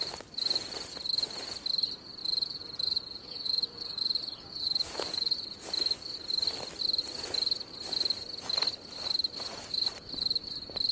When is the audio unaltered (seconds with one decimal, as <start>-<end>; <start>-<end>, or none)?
0.0-2.2; 5.7-10.9